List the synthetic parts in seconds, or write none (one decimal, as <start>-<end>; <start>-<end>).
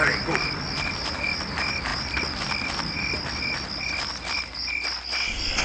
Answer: none